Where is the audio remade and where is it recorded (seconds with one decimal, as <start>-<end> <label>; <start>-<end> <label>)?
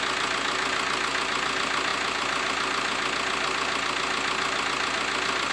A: 0.0-5.5 recorded